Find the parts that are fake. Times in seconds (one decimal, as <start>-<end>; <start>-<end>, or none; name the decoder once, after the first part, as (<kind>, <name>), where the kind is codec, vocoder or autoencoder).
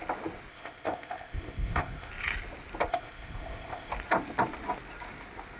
0.5-2.1 (codec, ZipCodec); 2.9-3.9